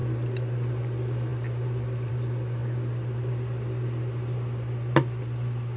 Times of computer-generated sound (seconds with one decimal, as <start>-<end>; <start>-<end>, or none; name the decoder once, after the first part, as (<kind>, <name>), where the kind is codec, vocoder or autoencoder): none